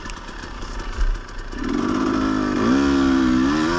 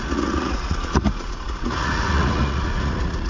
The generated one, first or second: second